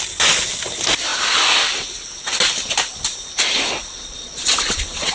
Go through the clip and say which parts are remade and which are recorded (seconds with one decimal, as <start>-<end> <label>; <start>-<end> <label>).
0.0-3.8 recorded; 3.8-5.1 remade

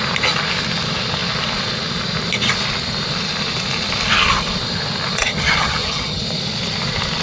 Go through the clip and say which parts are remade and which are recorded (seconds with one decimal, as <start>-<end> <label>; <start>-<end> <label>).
0.0-5.2 recorded; 5.2-6.2 remade; 6.2-7.2 recorded